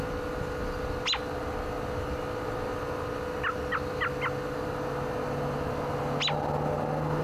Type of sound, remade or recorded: recorded